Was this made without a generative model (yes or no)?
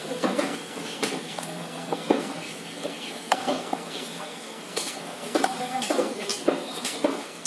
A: no